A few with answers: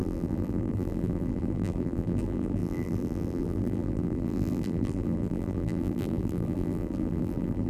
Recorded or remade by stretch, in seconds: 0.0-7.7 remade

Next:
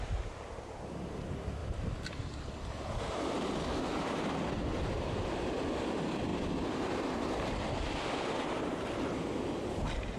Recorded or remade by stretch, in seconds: 0.0-6.3 recorded; 6.3-10.2 remade

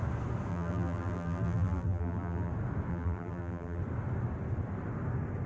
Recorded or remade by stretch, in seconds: 0.0-0.5 recorded; 0.5-2.5 remade; 2.5-2.9 recorded; 2.9-3.8 remade; 3.8-5.5 recorded

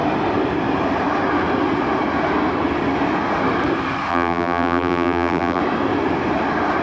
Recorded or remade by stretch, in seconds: 0.0-4.1 recorded; 4.1-5.6 remade; 5.6-6.8 recorded